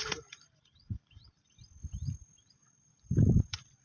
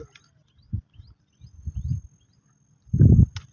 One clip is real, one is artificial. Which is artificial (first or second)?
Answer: first